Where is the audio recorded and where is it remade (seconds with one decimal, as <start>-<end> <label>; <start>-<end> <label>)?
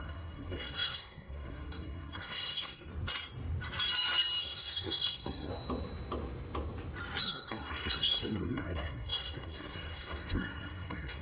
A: 0.0-2.9 remade; 2.9-4.4 recorded; 4.4-5.5 remade; 5.5-7.2 recorded; 7.2-11.2 remade